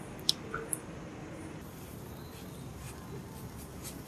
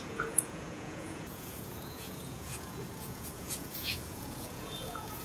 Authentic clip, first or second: first